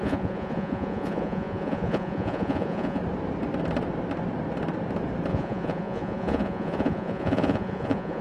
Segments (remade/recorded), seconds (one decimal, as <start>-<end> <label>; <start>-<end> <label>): 0.0-3.0 remade; 3.0-5.3 recorded; 5.3-8.2 remade